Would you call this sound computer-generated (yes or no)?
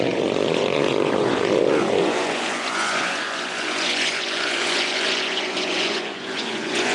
yes